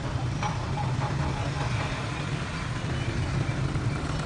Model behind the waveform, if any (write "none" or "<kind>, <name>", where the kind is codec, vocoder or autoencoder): none